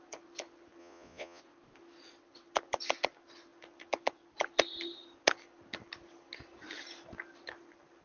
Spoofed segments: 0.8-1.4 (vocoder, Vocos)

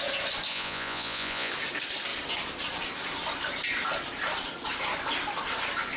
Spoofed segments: 0.5-1.5 (vocoder, Vocos)

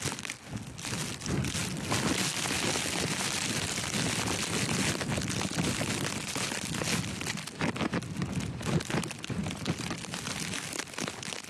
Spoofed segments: none

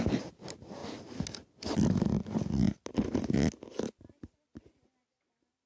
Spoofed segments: none

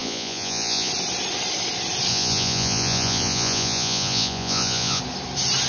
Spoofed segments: 0.0-0.9 (vocoder, Vocos); 2.1-5.0